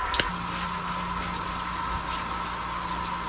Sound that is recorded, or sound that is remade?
recorded